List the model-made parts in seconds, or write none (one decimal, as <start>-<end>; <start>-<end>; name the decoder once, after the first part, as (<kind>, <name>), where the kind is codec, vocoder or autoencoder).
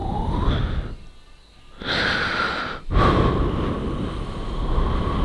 none